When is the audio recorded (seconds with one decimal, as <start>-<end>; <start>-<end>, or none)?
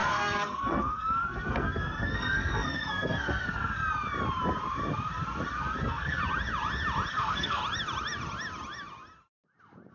3.8-5.8; 6.2-7.1; 7.6-9.9